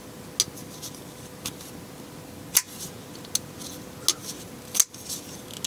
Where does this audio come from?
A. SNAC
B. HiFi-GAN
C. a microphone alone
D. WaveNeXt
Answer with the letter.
C